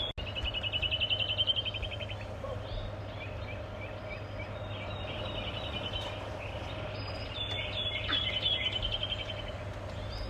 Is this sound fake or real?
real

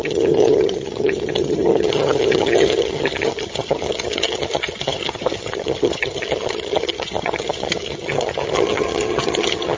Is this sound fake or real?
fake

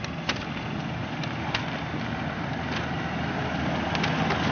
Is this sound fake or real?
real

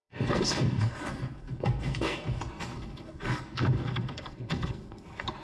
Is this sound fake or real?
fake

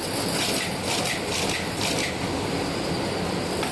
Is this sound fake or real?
fake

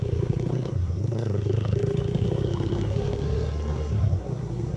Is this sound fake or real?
fake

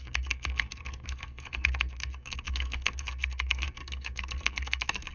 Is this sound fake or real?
fake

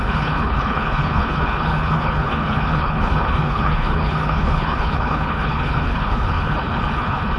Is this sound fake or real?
fake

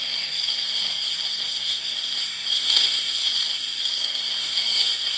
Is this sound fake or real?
fake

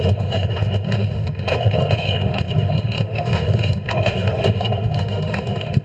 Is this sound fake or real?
fake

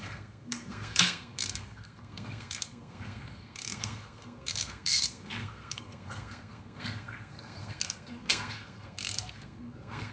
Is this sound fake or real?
fake